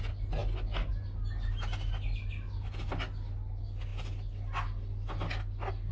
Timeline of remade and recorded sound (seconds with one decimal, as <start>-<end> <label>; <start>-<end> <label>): 0.0-5.9 recorded